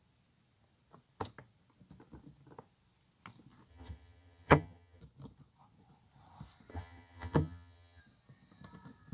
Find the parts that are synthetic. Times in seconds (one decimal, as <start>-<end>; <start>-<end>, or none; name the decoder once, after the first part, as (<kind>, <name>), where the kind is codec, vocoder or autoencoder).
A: 3.7-5.0 (vocoder, HiFi-GAN); 6.7-8.0